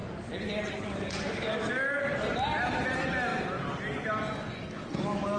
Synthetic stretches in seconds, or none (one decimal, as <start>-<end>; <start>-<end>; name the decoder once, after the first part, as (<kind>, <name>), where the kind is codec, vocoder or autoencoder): none